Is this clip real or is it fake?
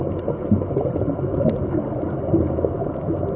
real